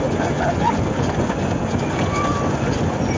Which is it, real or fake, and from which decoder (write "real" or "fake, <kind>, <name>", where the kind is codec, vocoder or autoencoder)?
fake, vocoder, Vocos